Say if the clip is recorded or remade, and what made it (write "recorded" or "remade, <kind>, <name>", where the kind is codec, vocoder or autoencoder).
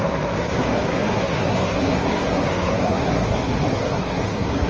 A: remade, codec, SNAC